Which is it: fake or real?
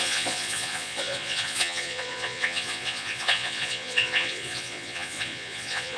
fake